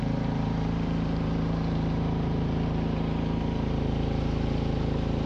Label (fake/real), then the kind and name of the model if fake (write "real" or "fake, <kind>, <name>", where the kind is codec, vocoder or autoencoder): fake, vocoder, BigVGAN v2